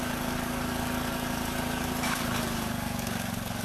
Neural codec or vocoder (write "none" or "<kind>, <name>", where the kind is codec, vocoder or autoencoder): codec, DAC